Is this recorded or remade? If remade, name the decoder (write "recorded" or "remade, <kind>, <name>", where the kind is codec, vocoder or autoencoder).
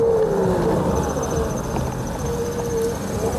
recorded